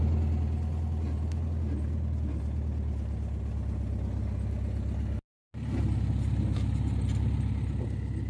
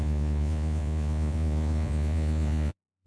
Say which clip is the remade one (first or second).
second